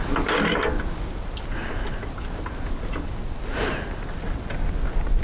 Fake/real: real